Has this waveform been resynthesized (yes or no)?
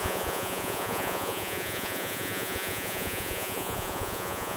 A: yes